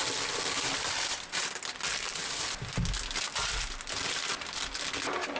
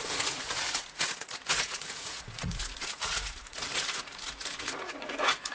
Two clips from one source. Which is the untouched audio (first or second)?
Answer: first